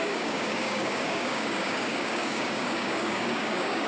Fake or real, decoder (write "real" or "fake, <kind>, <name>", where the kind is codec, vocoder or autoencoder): fake, codec, DAC